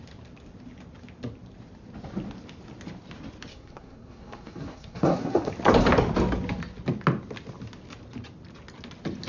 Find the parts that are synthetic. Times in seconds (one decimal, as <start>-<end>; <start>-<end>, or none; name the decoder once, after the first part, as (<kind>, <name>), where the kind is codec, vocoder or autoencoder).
3.5-5.5 (codec, SNAC)